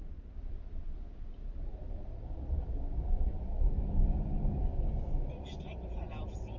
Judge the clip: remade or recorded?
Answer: recorded